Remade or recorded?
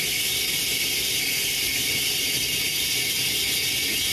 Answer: recorded